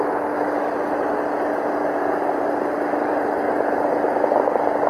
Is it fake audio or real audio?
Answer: real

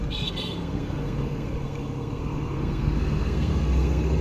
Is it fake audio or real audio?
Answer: fake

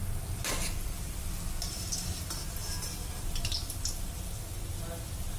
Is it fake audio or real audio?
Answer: real